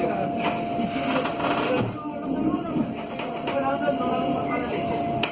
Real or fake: fake